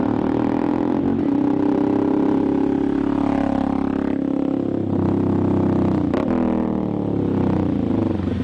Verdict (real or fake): real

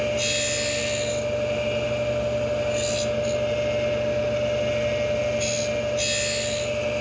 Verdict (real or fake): real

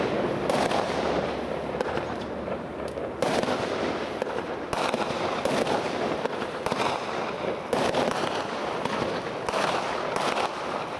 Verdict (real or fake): real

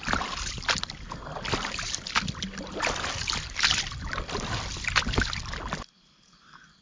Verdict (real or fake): real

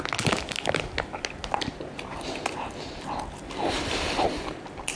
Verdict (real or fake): real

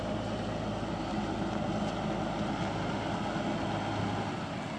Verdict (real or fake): real